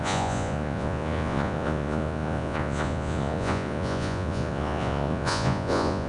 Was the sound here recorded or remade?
remade